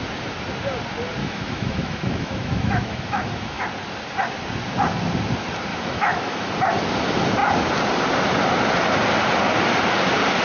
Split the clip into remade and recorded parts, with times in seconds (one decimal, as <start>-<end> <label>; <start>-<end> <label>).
0.0-1.2 recorded; 1.2-3.6 remade; 3.6-5.7 recorded; 5.7-6.5 remade; 6.5-10.4 recorded